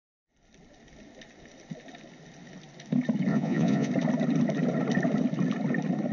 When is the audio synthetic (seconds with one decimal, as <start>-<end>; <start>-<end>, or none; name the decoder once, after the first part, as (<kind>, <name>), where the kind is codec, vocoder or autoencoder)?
3.3-3.9 (vocoder, Vocos)